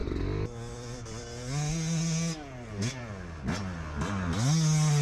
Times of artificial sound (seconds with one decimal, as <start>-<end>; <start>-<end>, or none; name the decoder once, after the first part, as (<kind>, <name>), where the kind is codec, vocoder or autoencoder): none